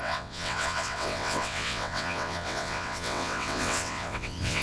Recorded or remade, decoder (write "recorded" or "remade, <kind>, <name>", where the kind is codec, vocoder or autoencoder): remade, vocoder, WaveNeXt